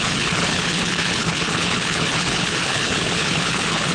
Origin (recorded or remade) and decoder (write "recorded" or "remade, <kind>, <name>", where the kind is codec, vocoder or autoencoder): remade, codec, HILCodec